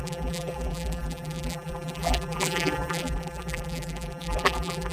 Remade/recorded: remade